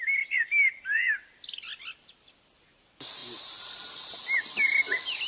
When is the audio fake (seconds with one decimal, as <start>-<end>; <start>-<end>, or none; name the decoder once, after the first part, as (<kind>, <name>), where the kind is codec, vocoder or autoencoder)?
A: none